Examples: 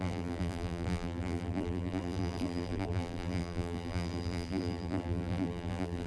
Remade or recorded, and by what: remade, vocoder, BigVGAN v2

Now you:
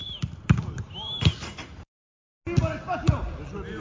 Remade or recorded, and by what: recorded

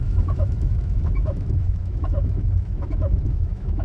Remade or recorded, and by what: remade, autoencoder, DAC-VAE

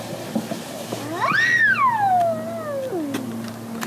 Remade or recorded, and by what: recorded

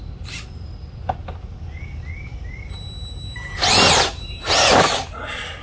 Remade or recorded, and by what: recorded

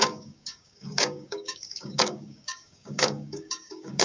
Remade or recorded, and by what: remade, codec, DAC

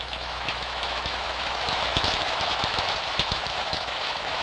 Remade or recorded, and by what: remade, autoencoder, DAC-VAE